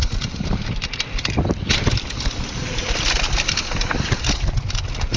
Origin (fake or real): real